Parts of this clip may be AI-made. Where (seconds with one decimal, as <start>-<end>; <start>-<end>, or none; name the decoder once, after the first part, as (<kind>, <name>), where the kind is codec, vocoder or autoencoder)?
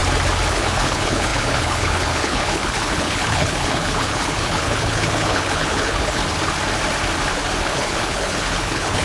0.5-6.2 (codec, HILCodec); 7.6-9.0